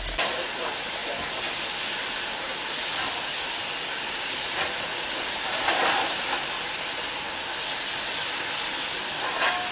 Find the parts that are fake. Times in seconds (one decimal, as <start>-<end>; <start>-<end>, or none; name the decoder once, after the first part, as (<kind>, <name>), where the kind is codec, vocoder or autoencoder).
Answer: none